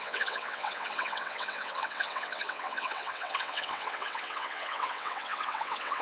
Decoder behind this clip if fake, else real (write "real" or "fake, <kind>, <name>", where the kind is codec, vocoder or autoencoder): fake, vocoder, WaveNeXt